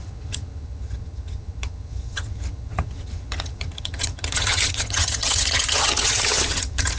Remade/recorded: remade